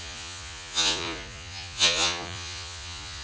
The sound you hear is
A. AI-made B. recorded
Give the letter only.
A